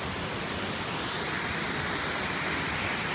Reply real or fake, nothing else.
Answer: real